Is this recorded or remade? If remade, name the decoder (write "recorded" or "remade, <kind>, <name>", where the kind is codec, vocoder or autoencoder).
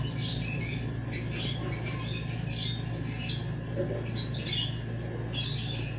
recorded